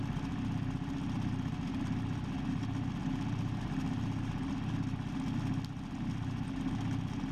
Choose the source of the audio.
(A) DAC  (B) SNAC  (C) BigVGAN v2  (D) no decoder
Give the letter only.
D